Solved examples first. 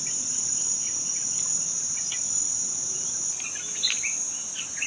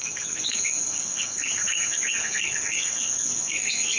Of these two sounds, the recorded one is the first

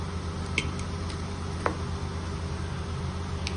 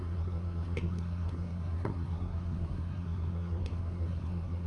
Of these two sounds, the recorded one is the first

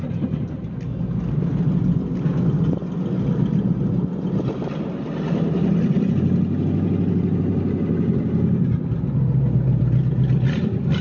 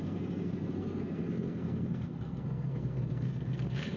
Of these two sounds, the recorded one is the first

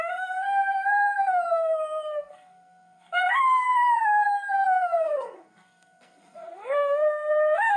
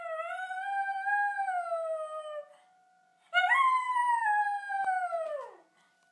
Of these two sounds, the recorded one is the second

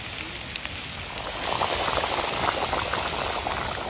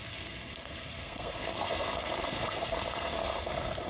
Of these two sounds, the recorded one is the first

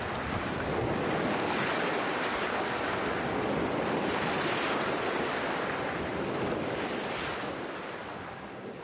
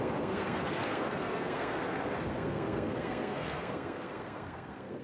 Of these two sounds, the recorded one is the first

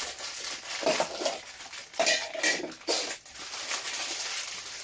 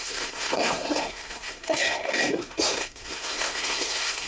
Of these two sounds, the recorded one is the first